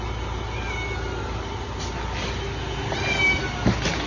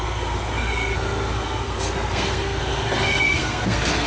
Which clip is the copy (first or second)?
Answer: second